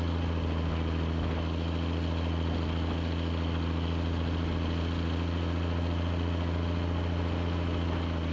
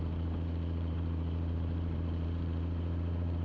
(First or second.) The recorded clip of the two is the first